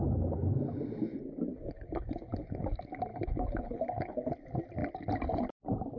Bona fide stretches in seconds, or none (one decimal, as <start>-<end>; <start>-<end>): 0.0-1.5; 2.7-3.1; 4.3-6.0